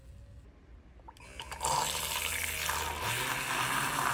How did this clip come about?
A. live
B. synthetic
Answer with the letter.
A